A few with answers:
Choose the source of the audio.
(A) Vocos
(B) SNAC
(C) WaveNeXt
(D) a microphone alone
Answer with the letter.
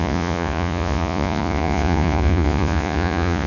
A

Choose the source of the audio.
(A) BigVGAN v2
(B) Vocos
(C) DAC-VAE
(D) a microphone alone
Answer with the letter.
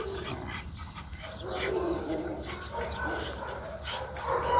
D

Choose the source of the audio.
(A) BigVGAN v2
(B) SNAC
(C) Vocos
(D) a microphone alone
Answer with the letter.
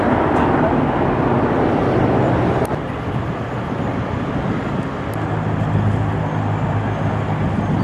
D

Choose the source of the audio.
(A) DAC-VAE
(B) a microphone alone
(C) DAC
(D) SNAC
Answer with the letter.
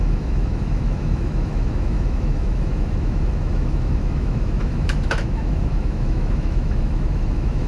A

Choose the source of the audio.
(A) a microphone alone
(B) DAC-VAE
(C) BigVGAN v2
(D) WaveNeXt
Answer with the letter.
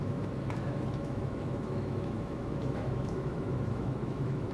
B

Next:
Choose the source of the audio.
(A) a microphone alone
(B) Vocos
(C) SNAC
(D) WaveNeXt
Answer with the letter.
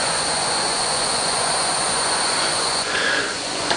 B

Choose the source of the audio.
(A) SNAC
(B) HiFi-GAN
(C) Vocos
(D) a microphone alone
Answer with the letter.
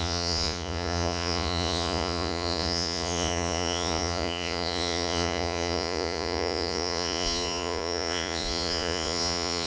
C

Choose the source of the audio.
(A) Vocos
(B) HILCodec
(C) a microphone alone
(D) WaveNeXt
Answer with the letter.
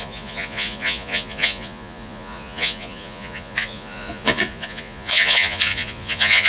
A